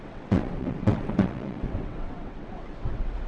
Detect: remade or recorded remade